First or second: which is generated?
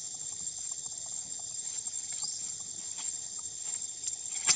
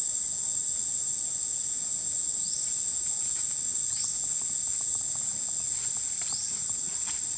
first